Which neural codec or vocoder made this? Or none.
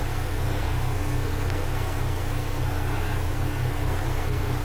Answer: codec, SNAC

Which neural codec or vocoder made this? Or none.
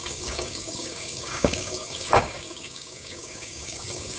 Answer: codec, DAC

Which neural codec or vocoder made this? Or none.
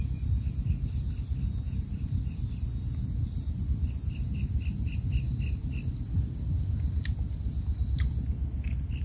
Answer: none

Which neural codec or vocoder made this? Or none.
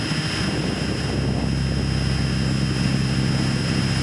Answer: none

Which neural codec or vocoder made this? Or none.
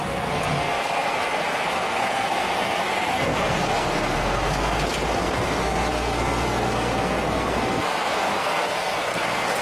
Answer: codec, SNAC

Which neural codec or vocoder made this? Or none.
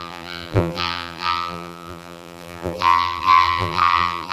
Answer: vocoder, BigVGAN v2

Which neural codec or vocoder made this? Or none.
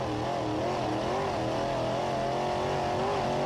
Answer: none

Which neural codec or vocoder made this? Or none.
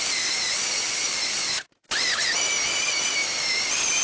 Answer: none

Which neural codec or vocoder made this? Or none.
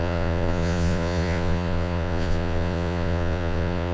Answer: vocoder, Vocos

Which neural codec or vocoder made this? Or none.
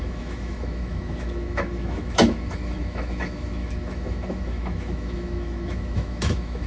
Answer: autoencoder, DAC-VAE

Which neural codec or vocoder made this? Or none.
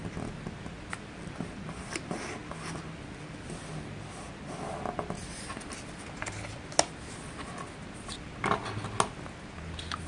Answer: none